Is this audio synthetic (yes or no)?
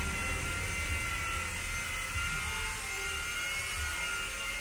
no